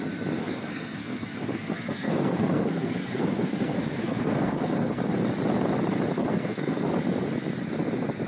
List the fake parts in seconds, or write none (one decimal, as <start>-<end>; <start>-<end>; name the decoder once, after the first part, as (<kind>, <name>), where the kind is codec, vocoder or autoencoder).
0.4-5.0 (codec, SNAC); 6.2-6.9